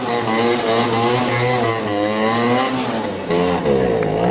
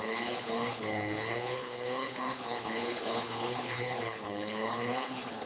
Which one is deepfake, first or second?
second